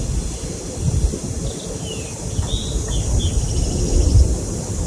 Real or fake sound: real